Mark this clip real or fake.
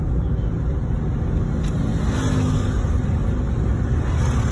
real